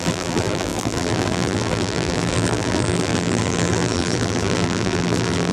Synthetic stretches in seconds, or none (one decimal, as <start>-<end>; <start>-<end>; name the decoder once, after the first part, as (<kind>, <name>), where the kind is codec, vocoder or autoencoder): 0.0-5.5 (vocoder, BigVGAN v2)